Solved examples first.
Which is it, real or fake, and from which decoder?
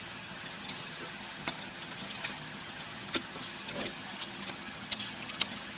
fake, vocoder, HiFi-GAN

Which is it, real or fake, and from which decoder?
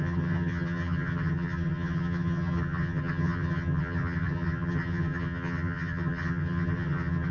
fake, vocoder, HiFi-GAN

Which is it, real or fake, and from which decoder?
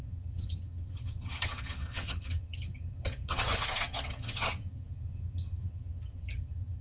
fake, vocoder, HiFi-GAN